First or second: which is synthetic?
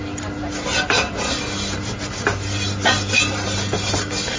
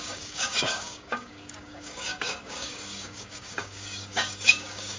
second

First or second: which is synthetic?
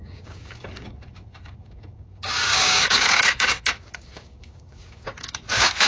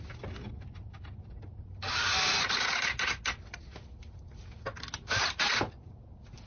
first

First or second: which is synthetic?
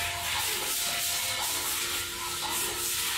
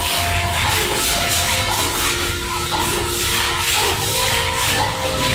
second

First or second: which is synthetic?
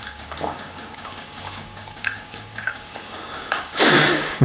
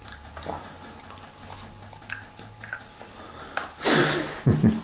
first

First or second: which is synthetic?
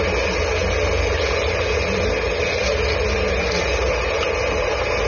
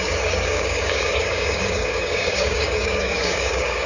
second